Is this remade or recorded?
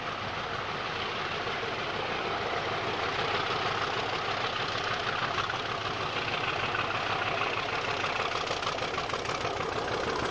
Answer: recorded